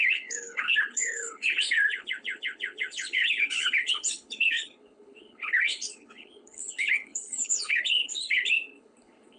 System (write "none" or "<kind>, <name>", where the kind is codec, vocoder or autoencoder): codec, HILCodec